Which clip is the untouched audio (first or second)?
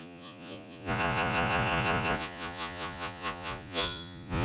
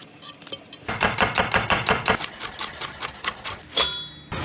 second